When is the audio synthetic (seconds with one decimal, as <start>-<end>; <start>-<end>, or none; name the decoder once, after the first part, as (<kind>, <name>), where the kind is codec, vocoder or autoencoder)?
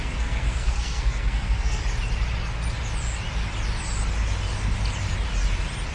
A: 0.0-1.8 (codec, SNAC)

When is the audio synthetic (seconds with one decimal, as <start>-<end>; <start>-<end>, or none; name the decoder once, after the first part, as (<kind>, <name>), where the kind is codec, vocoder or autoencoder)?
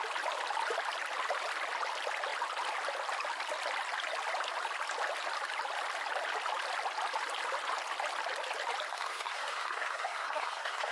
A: 8.9-10.9 (codec, SNAC)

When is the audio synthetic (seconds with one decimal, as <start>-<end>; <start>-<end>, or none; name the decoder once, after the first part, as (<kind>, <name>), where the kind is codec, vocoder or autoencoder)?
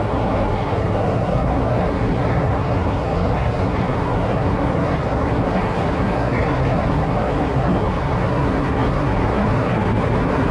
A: 0.0-10.5 (codec, SNAC)